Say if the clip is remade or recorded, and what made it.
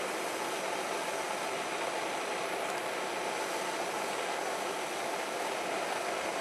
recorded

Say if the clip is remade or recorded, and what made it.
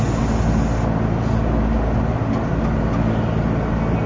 recorded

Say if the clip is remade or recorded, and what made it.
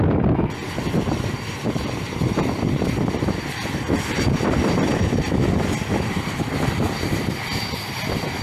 recorded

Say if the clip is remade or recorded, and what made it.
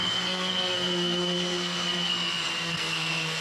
remade, codec, SNAC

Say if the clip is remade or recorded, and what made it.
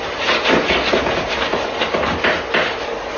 recorded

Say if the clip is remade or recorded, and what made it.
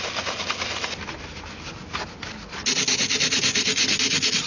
recorded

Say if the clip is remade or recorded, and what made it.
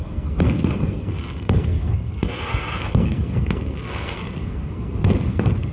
remade, codec, SNAC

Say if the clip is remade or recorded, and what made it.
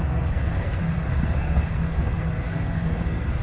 remade, codec, SNAC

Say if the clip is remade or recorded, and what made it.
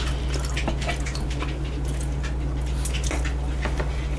recorded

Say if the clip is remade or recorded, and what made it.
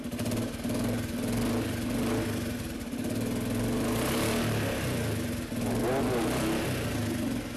recorded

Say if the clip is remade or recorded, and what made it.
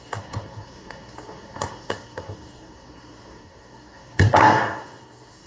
remade, codec, SNAC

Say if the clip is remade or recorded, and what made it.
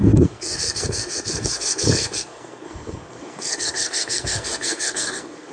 remade, codec, SNAC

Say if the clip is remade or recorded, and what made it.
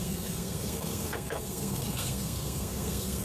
remade, codec, SNAC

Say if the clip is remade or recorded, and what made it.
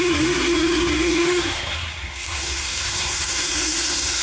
remade, codec, SNAC